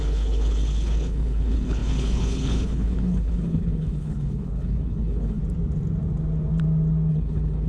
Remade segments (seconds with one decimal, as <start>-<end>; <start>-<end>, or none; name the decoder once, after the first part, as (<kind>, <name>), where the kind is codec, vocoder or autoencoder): 0.0-5.4 (codec, HILCodec); 7.1-7.7